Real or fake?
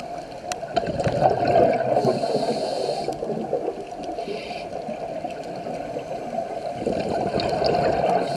real